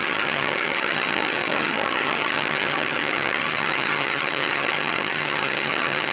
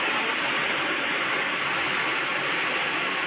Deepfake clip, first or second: first